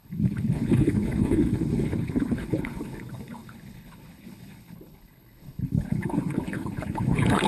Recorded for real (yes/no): no